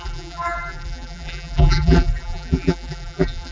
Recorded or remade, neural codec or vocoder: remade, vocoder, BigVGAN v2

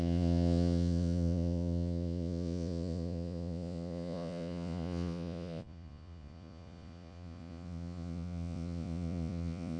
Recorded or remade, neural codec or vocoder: remade, vocoder, Vocos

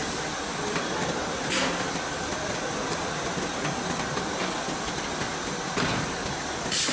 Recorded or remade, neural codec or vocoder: recorded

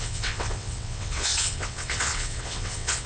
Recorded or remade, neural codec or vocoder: remade, vocoder, WaveNeXt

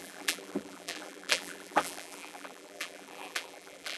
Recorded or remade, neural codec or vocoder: remade, vocoder, BigVGAN v2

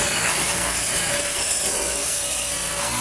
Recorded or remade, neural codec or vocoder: remade, codec, SNAC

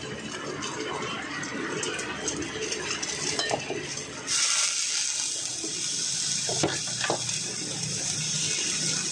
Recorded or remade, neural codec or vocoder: recorded